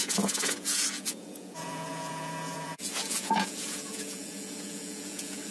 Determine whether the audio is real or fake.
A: fake